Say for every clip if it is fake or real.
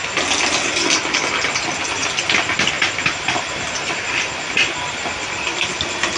real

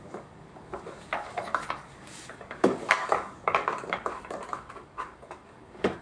fake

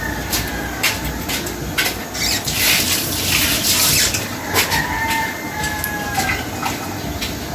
real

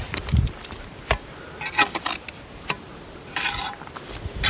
real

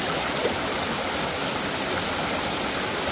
real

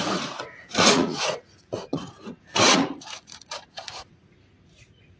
fake